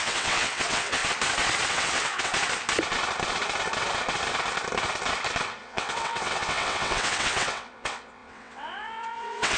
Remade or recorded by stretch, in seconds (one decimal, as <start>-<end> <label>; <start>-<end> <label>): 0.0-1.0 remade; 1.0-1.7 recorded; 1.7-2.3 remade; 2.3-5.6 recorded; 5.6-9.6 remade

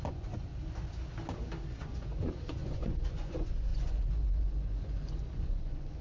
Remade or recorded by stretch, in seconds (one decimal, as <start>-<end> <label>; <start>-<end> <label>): 0.0-0.5 remade; 0.5-1.7 recorded; 1.7-6.0 remade

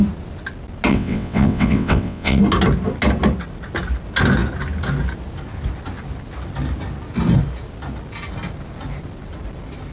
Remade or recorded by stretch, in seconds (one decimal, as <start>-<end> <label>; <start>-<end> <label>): 0.0-0.9 recorded; 0.9-2.4 remade; 2.4-9.9 recorded